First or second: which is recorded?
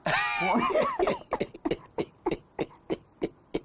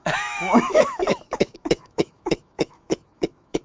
first